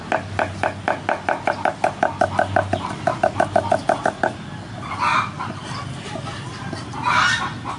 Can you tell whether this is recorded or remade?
recorded